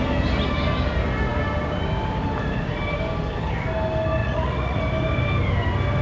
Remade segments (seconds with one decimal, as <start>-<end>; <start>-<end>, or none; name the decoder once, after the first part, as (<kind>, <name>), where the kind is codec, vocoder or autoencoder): 4.2-4.8 (vocoder, Vocos)